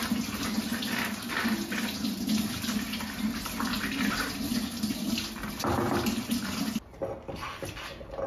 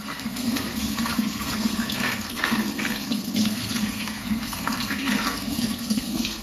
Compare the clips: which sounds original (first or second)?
first